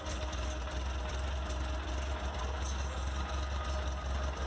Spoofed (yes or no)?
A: no